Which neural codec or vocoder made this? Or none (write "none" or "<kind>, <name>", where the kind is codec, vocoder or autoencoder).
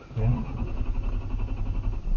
none